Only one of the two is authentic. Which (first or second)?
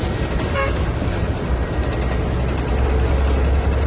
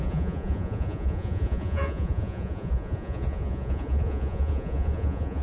first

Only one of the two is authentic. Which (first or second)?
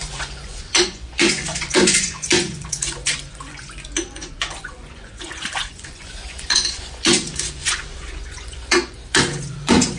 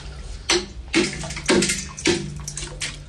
second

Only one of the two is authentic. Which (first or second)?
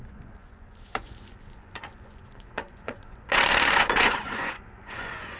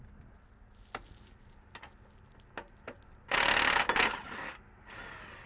second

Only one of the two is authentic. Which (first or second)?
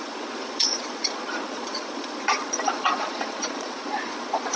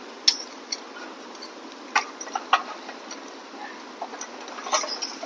second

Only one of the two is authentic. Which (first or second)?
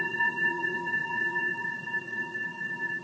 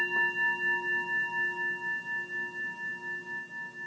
second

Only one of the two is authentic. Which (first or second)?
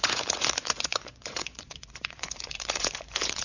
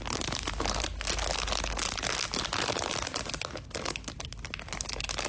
second